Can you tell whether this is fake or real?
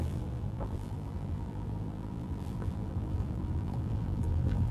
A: fake